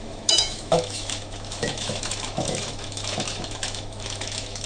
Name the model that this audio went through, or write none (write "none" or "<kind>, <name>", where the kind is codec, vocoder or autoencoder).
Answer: autoencoder, DAC-VAE